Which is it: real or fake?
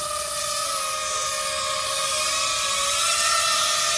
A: real